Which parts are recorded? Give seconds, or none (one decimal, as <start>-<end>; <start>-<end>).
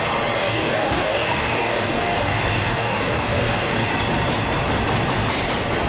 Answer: 0.0-0.4; 3.9-5.9